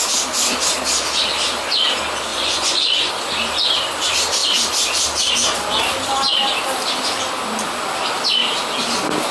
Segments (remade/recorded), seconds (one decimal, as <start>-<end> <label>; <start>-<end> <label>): 0.0-2.3 recorded; 2.3-3.1 remade; 3.1-9.3 recorded